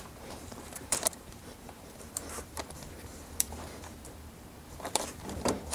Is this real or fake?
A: fake